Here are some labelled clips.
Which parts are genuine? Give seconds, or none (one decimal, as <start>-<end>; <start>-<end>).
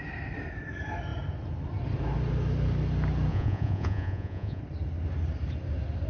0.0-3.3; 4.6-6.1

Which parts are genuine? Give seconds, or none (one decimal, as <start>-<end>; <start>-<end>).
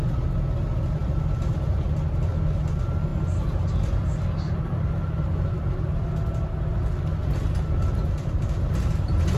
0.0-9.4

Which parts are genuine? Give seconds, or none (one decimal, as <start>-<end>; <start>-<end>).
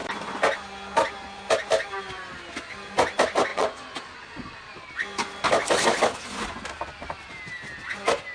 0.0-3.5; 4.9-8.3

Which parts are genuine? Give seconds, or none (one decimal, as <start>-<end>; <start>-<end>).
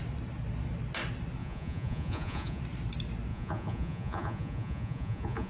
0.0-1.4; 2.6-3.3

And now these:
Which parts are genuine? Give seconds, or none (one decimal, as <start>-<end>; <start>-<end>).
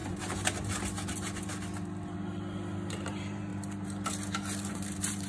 0.0-2.9; 3.5-4.7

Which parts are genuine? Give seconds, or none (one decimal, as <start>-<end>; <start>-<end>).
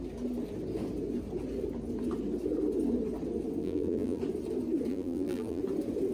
0.0-3.6; 4.2-4.9; 5.6-6.1